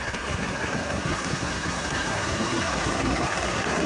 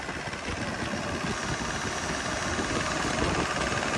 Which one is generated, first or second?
first